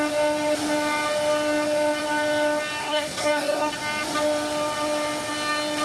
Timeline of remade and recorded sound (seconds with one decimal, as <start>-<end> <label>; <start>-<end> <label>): 0.0-2.8 recorded; 2.8-3.7 remade; 3.7-5.8 recorded